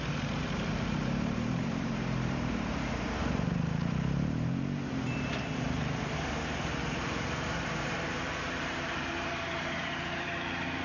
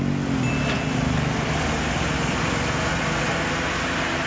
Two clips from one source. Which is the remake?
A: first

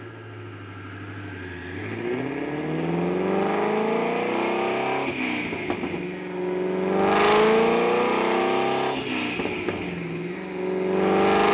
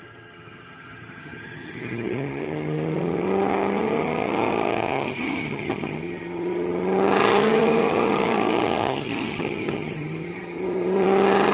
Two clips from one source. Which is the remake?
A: second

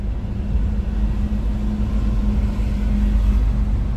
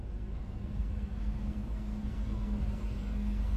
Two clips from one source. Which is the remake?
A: second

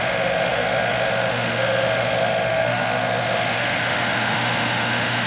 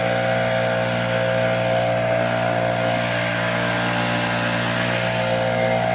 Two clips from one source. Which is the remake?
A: first